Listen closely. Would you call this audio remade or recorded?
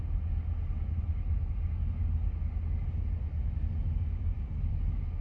recorded